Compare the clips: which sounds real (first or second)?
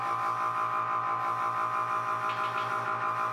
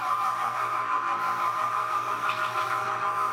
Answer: first